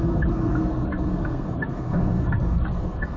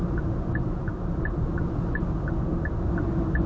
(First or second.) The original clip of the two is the second